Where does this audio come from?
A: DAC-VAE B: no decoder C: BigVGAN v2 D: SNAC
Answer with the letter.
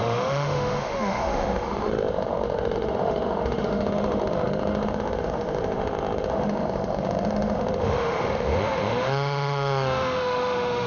A